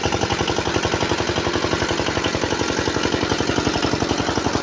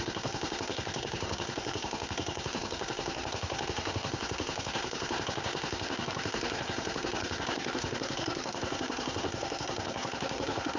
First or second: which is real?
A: first